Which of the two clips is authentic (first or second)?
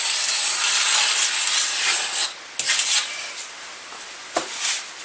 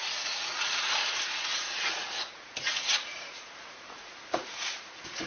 first